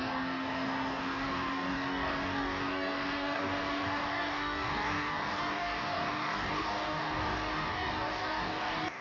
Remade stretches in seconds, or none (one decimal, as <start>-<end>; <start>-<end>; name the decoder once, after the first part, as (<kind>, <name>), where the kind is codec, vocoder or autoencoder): 0.0-9.0 (codec, DAC)